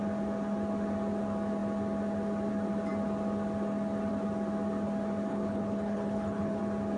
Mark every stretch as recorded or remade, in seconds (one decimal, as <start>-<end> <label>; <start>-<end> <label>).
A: 0.0-5.3 recorded; 5.3-6.6 remade; 6.6-7.0 recorded